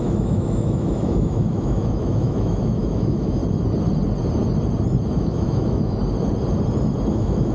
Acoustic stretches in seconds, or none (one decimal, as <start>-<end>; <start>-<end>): 3.4-5.1; 6.0-7.1